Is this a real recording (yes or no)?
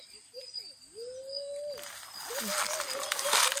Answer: yes